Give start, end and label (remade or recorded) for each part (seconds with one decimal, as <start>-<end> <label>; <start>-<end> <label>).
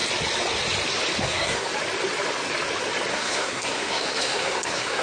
0.0-1.2 recorded; 1.2-1.7 remade; 1.7-3.1 recorded; 3.1-5.0 remade